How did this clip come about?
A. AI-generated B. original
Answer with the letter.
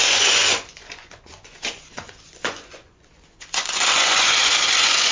A